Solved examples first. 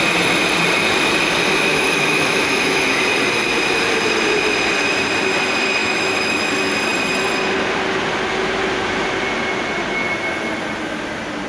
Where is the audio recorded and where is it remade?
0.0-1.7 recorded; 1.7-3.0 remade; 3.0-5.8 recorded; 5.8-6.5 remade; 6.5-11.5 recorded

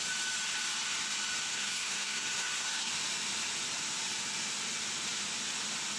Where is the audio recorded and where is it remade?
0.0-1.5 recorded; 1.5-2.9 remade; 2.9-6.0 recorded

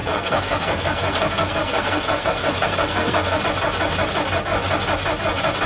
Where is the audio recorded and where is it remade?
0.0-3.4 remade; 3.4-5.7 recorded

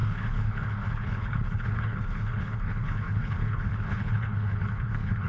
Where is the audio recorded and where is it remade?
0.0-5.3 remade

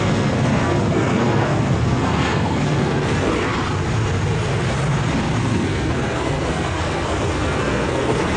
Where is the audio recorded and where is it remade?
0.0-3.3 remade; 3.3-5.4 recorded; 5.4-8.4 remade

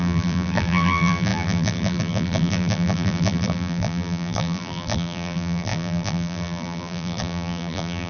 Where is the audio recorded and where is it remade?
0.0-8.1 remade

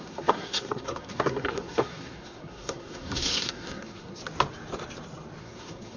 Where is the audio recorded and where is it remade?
0.0-4.2 remade; 4.2-5.4 recorded; 5.4-6.0 remade